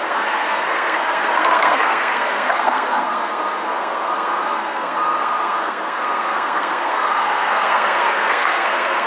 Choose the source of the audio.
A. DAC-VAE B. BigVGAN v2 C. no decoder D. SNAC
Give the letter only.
D